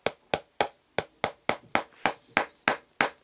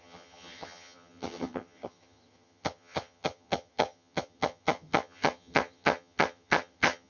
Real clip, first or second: first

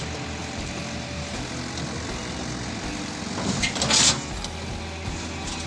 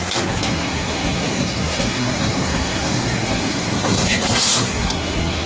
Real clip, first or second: first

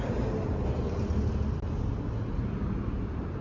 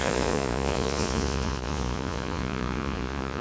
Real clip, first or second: first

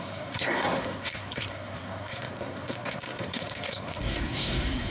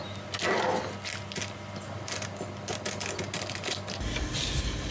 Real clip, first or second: second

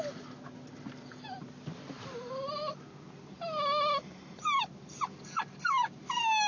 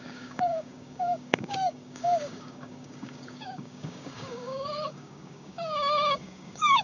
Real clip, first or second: first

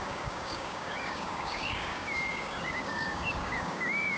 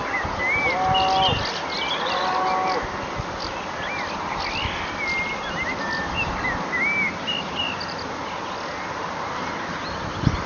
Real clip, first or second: second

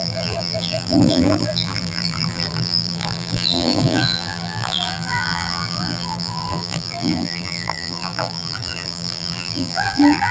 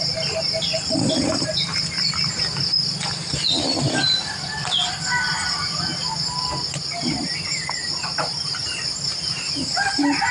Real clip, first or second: second